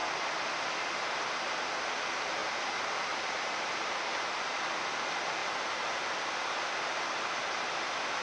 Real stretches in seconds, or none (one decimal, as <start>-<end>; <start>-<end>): 0.0-2.4; 5.0-5.4